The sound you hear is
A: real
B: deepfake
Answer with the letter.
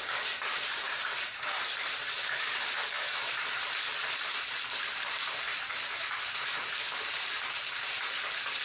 B